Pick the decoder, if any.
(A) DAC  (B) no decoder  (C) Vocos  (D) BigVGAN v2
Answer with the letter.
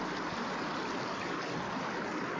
B